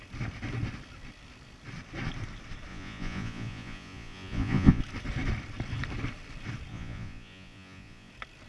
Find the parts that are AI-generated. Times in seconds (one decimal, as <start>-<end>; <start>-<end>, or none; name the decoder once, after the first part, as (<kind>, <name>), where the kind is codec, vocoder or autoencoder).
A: 2.7-4.8 (vocoder, Vocos); 6.7-8.1